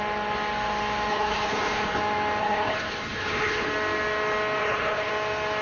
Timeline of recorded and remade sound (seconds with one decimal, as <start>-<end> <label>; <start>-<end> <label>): 0.0-1.1 recorded; 1.1-2.0 remade; 2.0-2.4 recorded; 2.4-3.7 remade; 3.7-4.6 recorded; 4.6-5.1 remade; 5.1-5.6 recorded